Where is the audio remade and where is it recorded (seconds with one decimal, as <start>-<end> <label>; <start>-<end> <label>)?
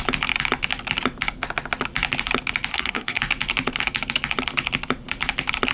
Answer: 0.0-2.7 recorded; 2.7-3.2 remade; 3.2-5.7 recorded